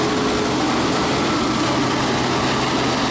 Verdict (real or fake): real